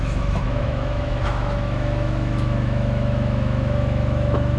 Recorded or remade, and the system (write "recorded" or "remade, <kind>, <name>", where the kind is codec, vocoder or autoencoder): remade, autoencoder, DAC-VAE